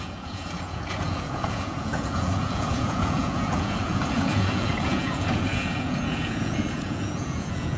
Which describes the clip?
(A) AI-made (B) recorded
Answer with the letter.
A